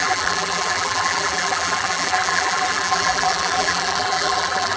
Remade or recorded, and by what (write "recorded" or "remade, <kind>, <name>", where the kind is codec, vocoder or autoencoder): remade, vocoder, BigVGAN v2